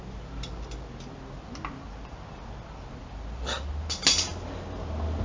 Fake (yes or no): no